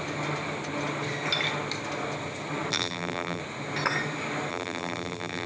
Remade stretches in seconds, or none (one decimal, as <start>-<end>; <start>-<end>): 2.7-3.4; 4.5-5.5